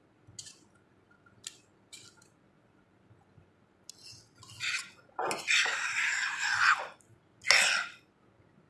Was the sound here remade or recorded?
recorded